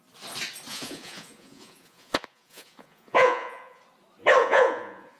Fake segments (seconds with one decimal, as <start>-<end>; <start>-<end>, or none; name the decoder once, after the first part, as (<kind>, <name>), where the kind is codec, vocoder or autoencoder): 0.7-3.8 (vocoder, Vocos); 4.4-5.2